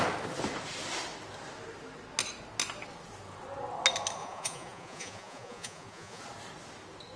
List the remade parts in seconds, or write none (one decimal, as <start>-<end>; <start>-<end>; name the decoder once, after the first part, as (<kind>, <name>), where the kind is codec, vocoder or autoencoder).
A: 4.2-6.2 (vocoder, Vocos)